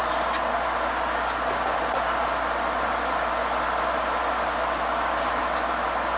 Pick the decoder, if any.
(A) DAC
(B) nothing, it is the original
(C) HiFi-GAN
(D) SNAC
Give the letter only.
B